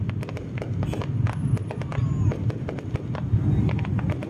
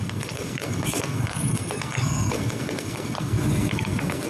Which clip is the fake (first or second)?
second